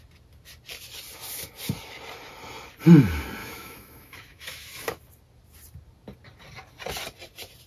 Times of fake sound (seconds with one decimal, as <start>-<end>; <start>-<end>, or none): 3.4-5.0